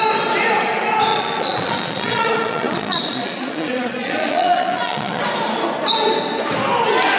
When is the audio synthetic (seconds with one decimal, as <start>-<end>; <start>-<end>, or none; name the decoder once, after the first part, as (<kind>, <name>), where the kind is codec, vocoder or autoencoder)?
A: 1.1-5.2 (vocoder, Vocos)